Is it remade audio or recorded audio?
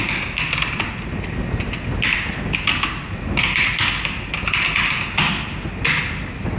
recorded